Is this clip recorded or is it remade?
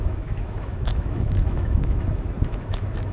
remade